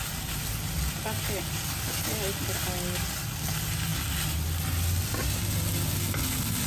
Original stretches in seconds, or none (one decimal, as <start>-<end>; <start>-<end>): 0.0-6.7